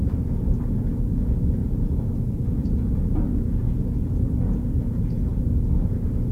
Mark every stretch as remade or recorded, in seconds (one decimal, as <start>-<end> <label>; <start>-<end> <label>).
0.0-1.6 recorded; 1.6-5.4 remade; 5.4-6.3 recorded